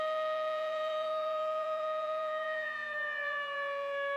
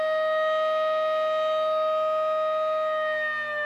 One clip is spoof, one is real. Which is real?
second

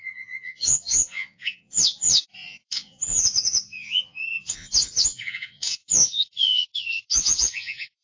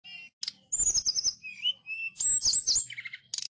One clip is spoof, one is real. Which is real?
second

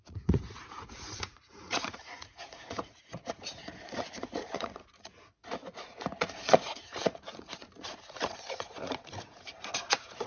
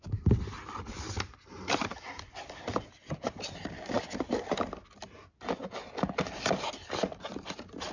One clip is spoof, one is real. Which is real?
second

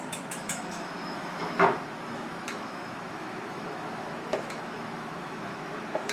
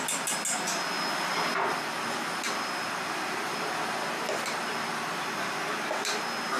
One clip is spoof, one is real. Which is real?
second